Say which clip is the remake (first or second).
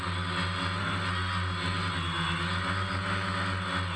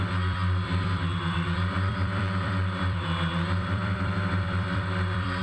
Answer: second